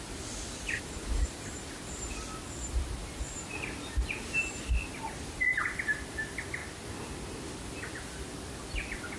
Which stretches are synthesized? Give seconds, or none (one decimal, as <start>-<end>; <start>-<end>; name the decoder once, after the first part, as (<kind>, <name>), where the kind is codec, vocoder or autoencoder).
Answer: none